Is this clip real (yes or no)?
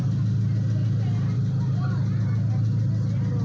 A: yes